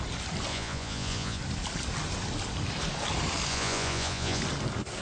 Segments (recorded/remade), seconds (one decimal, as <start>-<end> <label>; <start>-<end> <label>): 0.0-0.5 recorded; 0.5-1.4 remade; 1.4-3.5 recorded; 3.5-4.4 remade; 4.4-5.0 recorded